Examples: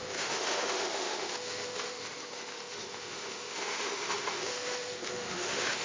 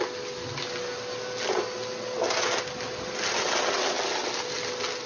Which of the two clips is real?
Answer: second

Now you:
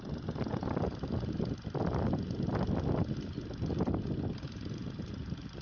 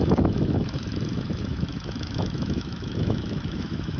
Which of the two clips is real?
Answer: first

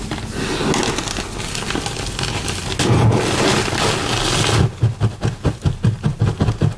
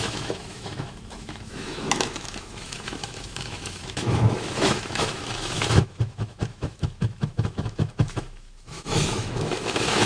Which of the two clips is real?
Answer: first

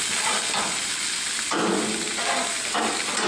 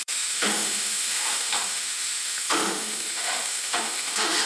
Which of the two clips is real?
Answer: first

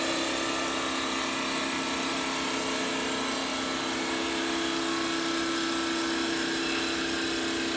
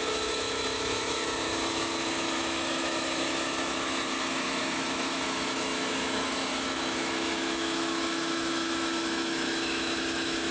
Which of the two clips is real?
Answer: first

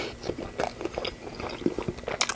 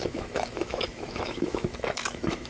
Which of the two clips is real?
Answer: first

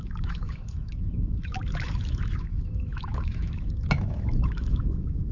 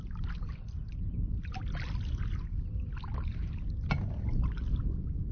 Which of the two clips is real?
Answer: second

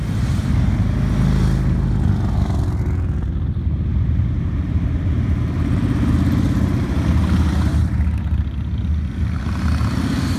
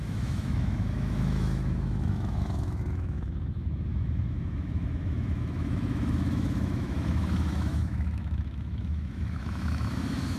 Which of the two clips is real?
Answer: first